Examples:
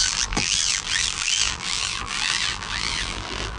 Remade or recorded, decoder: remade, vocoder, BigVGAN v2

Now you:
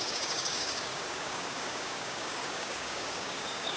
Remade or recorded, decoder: remade, codec, DAC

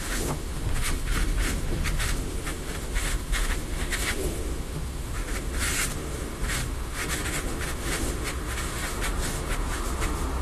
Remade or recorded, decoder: remade, autoencoder, DAC-VAE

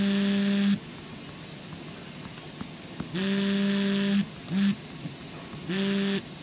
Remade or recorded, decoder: recorded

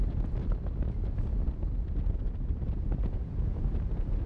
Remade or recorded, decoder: recorded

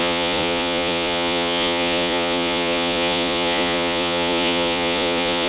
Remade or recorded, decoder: remade, vocoder, Vocos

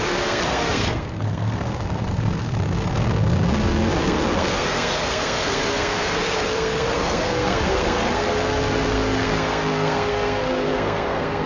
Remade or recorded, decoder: remade, codec, SNAC